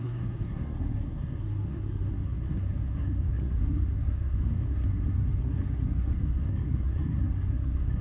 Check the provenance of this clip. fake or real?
fake